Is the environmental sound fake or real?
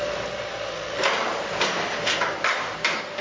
real